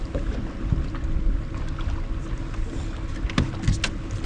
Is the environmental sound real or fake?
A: real